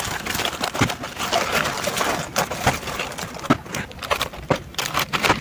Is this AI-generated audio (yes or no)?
no